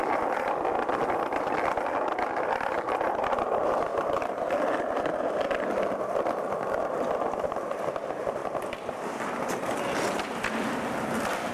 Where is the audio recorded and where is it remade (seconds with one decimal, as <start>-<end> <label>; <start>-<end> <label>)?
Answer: 0.0-11.5 remade